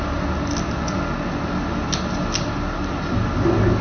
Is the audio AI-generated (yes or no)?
no